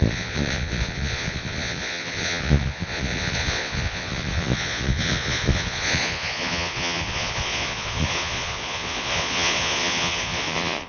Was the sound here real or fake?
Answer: fake